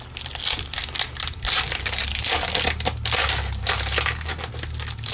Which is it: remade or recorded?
recorded